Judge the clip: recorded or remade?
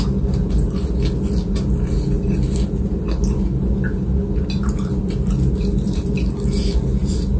recorded